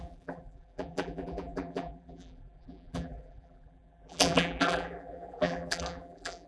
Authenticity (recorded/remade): remade